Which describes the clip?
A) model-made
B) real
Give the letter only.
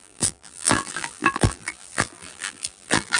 A